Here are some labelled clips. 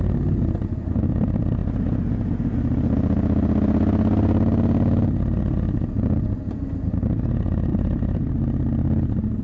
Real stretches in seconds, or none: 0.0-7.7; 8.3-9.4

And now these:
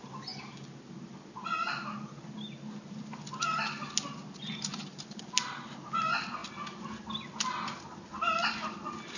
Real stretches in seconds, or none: 0.0-9.2

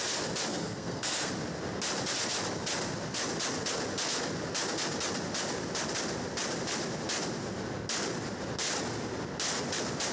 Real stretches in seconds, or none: 0.0-0.5; 1.3-10.1

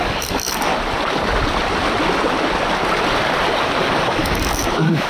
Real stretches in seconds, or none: 0.7-3.8

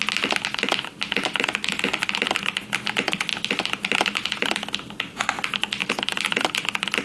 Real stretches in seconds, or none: 0.0-7.0

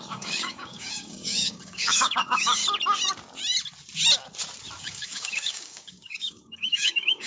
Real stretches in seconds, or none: 2.6-4.8